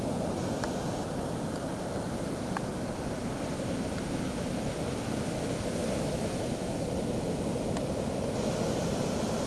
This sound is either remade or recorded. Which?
recorded